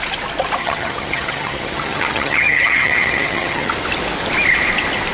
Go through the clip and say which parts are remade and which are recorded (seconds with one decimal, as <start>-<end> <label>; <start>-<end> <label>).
0.0-0.6 recorded; 0.6-3.7 remade; 3.7-5.1 recorded